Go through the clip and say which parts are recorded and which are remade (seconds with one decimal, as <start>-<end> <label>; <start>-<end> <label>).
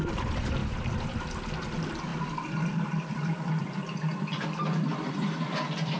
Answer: 0.0-6.0 remade